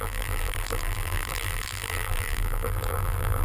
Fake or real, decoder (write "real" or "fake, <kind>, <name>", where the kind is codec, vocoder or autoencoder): fake, vocoder, BigVGAN v2